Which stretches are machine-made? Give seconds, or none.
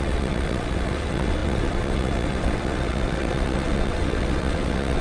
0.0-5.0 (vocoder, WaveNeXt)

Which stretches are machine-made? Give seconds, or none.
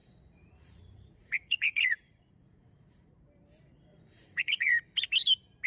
0.0-3.1 (vocoder, Vocos); 3.9-4.8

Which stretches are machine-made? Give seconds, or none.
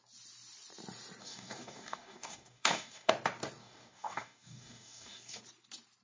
1.2-3.1 (codec, DAC); 3.6-5.4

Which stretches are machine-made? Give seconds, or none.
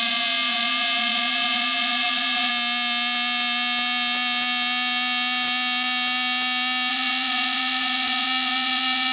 0.0-2.5 (vocoder, Vocos); 6.9-9.1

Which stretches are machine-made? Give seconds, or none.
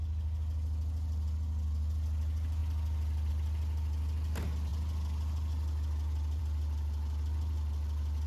none